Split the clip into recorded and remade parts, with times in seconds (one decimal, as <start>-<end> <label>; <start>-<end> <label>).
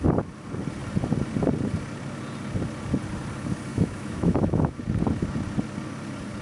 0.0-3.7 recorded; 3.7-4.8 remade; 4.8-6.4 recorded